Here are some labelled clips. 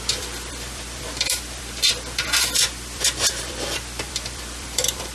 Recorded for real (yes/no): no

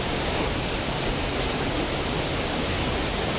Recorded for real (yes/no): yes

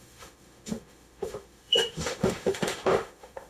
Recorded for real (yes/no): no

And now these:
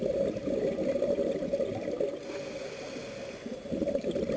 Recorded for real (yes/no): yes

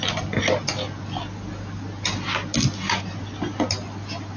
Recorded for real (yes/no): yes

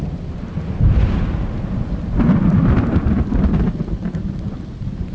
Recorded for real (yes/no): yes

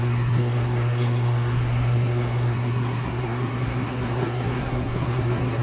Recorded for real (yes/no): no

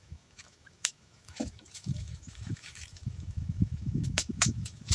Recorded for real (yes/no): no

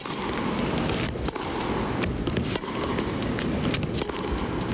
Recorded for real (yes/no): yes